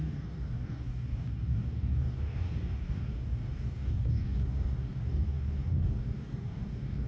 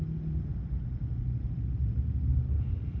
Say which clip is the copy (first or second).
first